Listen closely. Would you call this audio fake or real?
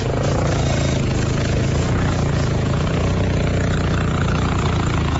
fake